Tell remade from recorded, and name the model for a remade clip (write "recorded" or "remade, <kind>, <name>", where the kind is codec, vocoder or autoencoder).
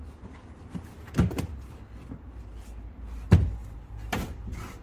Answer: recorded